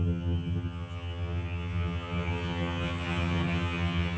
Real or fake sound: fake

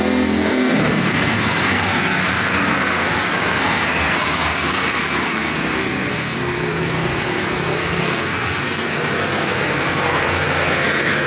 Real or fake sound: fake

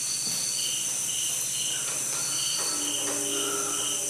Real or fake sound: real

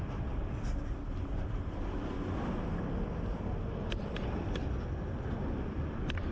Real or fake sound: fake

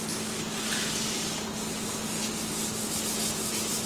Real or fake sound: real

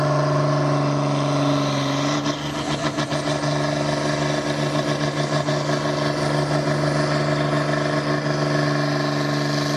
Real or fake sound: real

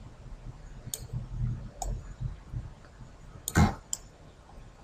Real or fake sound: real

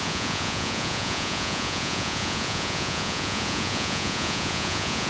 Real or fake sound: fake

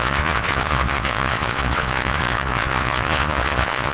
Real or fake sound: fake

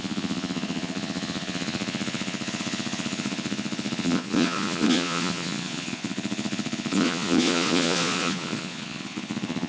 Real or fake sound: fake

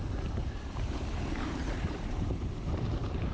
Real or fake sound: fake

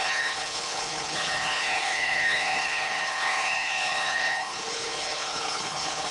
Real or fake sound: fake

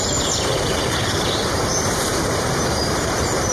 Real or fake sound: fake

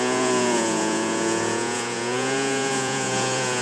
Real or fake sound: fake